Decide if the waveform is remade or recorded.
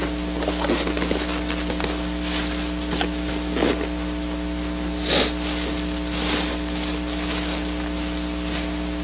recorded